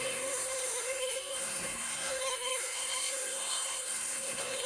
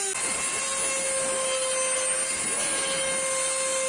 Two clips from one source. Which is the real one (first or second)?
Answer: second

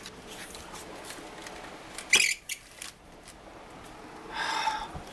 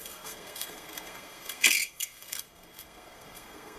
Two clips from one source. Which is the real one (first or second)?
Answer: first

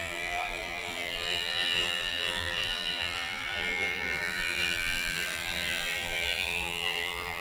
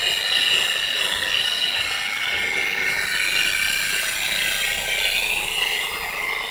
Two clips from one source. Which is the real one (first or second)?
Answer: second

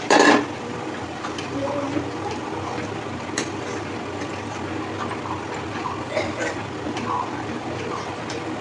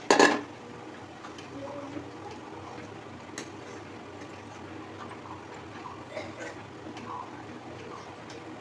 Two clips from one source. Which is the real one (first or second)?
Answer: second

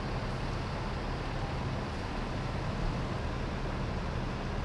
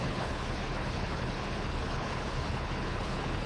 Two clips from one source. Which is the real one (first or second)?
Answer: first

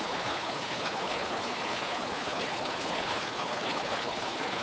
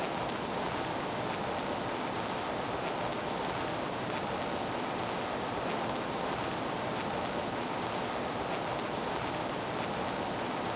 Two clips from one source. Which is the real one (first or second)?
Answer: second